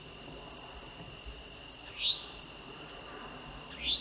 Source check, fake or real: real